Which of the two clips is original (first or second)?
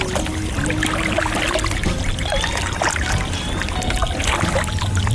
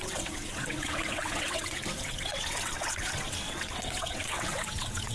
first